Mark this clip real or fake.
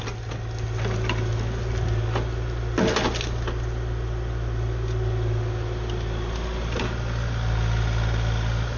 real